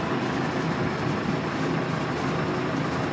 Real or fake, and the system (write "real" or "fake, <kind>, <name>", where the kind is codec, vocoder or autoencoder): real